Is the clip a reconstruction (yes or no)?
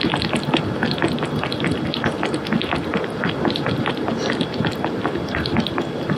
no